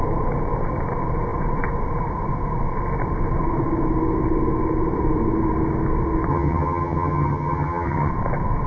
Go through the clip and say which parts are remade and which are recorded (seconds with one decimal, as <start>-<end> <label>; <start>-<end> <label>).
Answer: 0.0-6.3 recorded; 6.3-8.1 remade; 8.1-8.7 recorded

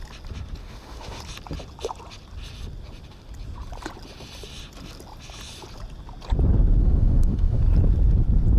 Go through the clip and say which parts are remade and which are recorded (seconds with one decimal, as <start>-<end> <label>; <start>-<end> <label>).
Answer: 0.0-0.6 recorded; 0.6-1.2 remade; 1.2-6.8 recorded; 6.8-7.6 remade; 7.6-8.6 recorded

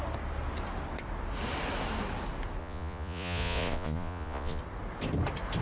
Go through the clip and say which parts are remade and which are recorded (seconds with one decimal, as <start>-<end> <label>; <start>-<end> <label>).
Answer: 0.0-2.6 recorded; 2.6-4.6 remade; 4.6-5.6 recorded

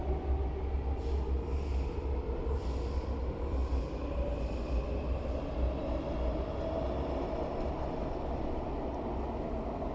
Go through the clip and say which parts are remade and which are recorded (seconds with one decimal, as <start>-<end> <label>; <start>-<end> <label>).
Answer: 0.0-9.9 recorded

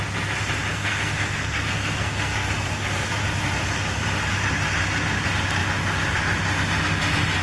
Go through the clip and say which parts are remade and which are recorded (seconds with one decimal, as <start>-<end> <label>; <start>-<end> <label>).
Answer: 0.0-0.7 recorded; 0.7-3.1 remade; 3.1-7.4 recorded

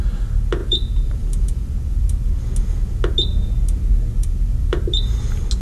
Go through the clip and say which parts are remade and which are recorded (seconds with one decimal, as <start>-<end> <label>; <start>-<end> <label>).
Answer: 0.0-0.6 recorded; 0.6-1.7 remade; 1.7-5.6 recorded

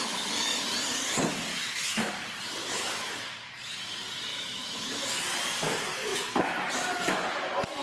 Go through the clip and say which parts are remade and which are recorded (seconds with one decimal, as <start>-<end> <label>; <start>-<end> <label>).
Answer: 0.0-1.5 recorded; 1.5-2.1 remade; 2.1-2.6 recorded; 2.6-3.2 remade; 3.2-4.3 recorded; 4.3-4.9 remade; 4.9-6.1 recorded; 6.1-6.7 remade; 6.7-7.8 recorded

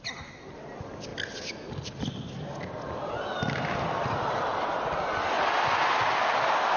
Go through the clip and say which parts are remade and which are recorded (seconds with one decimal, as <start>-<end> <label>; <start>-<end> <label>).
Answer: 0.0-6.8 recorded